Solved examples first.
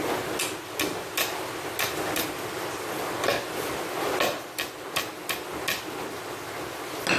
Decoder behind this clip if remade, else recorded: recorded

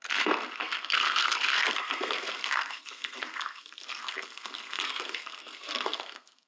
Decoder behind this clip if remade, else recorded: remade, codec, SNAC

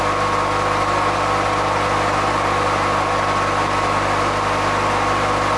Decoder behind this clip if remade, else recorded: recorded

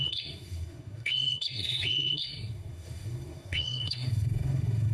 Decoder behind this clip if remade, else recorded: remade, codec, SNAC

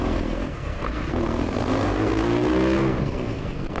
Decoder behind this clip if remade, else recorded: remade, codec, SNAC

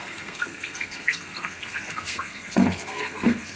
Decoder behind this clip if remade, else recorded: remade, codec, SNAC